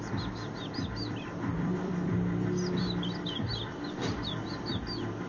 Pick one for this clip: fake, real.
fake